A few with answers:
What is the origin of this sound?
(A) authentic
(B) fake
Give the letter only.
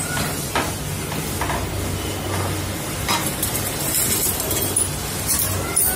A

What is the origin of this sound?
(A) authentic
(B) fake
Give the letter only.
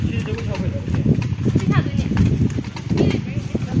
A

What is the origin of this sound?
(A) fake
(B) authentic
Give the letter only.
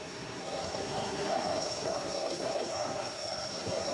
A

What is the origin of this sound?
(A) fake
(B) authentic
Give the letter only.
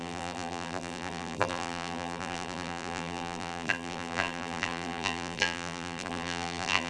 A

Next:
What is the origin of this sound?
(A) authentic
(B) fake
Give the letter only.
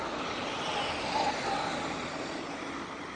A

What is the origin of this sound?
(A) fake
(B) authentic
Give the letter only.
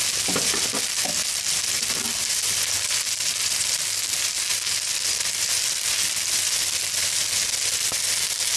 A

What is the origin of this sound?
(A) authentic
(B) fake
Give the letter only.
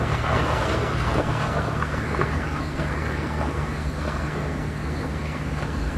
B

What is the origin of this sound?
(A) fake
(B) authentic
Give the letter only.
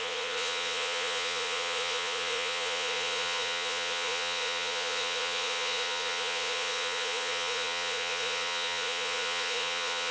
A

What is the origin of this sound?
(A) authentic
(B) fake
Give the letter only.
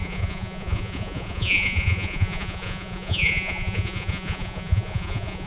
B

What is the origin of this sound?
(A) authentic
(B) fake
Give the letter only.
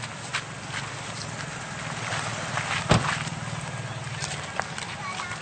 A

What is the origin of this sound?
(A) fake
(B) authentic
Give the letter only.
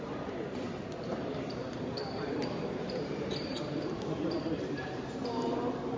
A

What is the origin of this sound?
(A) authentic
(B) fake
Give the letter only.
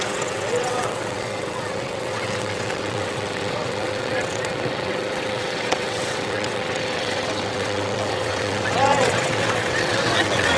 B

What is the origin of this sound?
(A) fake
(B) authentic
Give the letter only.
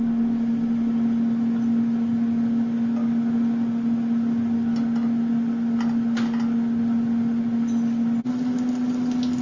B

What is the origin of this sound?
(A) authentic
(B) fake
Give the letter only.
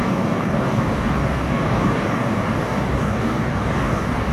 B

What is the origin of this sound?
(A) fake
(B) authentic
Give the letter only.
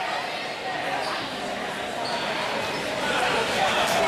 B